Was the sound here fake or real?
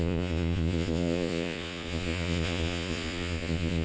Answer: fake